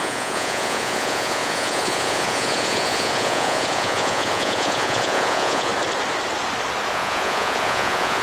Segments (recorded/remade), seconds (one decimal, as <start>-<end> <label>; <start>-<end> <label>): 0.0-5.7 remade; 5.7-6.9 recorded; 6.9-8.2 remade